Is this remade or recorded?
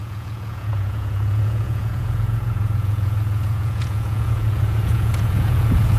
remade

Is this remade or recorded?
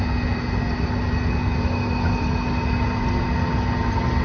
recorded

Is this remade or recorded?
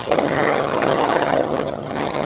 remade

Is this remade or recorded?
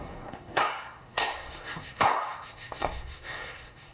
remade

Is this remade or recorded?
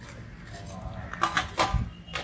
recorded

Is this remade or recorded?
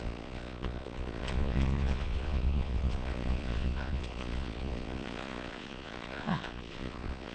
remade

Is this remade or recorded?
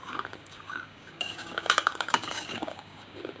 remade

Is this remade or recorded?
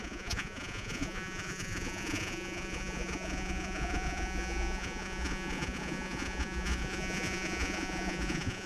remade